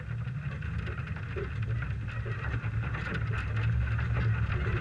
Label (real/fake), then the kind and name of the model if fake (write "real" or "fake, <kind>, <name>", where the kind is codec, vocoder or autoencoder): real